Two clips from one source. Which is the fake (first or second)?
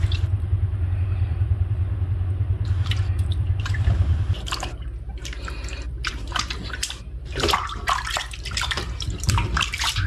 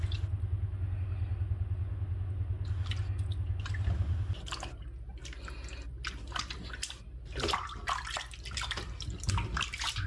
first